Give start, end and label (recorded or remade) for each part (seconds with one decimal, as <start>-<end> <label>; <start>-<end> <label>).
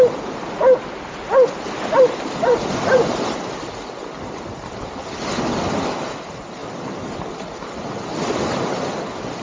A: 0.0-9.4 recorded